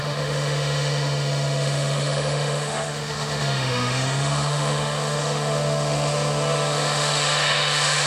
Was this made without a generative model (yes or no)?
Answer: no